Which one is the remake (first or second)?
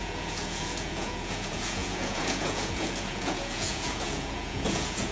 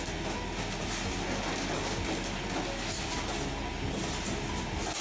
first